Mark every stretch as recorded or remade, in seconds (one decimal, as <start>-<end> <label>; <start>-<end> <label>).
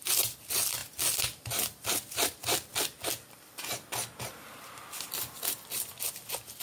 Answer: 0.0-0.8 remade; 0.8-1.4 recorded; 1.4-6.6 remade